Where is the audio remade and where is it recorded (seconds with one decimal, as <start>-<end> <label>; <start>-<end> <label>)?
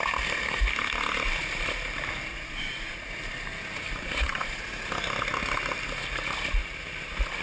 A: 0.0-2.3 recorded; 2.3-3.1 remade; 3.1-4.0 recorded; 4.0-4.7 remade; 4.7-7.4 recorded